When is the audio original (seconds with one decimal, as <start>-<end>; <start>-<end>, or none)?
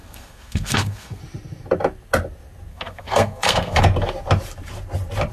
1.2-2.7; 3.8-5.3